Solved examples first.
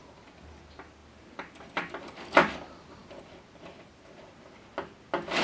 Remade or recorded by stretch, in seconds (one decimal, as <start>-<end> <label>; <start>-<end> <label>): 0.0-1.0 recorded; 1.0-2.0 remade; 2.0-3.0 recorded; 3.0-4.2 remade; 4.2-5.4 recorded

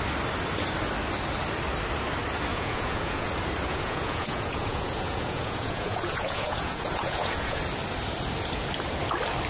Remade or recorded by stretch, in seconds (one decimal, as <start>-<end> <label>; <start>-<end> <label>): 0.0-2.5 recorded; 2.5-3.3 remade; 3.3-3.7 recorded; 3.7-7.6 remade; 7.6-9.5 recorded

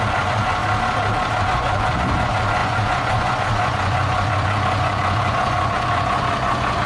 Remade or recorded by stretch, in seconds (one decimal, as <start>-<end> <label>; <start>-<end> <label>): 0.0-0.6 remade; 0.6-1.4 recorded; 1.4-6.9 remade

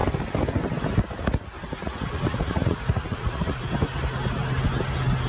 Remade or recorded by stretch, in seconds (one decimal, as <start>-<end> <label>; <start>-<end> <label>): 0.0-1.8 recorded; 1.8-3.7 remade; 3.7-5.3 recorded